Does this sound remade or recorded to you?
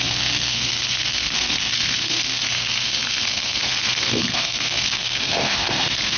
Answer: remade